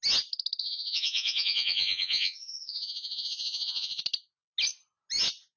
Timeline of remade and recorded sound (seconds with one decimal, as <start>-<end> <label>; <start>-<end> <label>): 0.0-0.6 recorded; 0.6-4.0 remade; 4.0-5.6 recorded